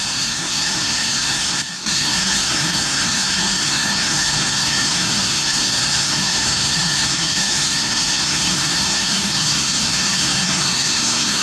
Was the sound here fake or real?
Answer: fake